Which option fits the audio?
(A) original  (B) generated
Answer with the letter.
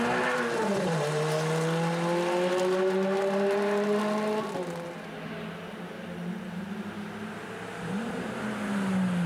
A